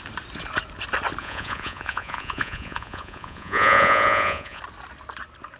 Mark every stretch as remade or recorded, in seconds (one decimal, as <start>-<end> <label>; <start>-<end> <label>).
0.0-1.2 recorded; 1.2-4.6 remade; 4.6-5.6 recorded